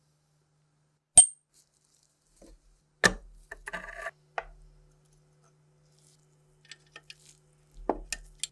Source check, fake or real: real